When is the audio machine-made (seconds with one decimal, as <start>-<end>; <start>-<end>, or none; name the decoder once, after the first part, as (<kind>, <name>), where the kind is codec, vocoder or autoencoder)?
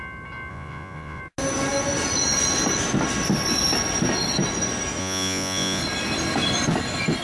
0.5-1.2 (vocoder, Vocos); 5.0-5.8